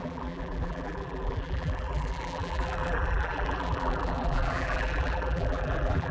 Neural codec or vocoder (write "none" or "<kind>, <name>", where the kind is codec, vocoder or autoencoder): vocoder, BigVGAN v2